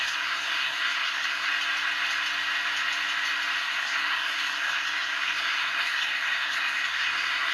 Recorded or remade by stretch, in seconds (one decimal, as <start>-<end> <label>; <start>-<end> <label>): 0.0-1.5 remade; 1.5-3.6 recorded; 3.6-7.5 remade